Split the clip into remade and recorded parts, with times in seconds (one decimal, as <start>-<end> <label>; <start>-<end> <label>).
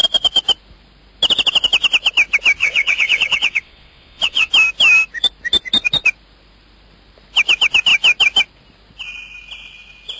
0.0-2.6 recorded; 2.6-4.5 remade; 4.5-10.2 recorded